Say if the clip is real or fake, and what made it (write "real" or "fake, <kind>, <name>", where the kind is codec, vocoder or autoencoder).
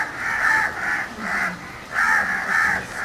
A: fake, vocoder, BigVGAN v2